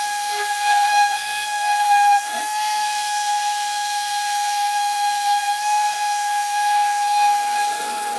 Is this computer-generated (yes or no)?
yes